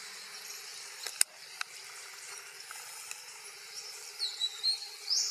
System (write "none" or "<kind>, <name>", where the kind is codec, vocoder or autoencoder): none